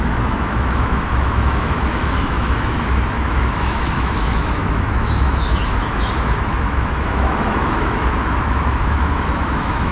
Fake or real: fake